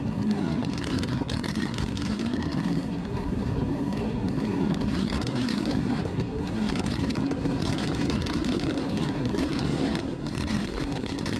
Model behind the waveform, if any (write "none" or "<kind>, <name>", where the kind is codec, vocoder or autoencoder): codec, SNAC